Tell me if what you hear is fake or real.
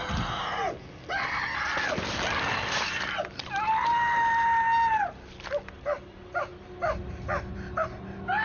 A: real